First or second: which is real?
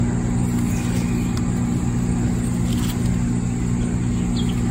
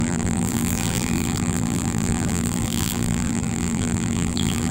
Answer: first